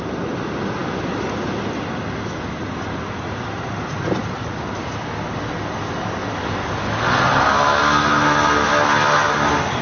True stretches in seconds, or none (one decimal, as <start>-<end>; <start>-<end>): 0.0-9.8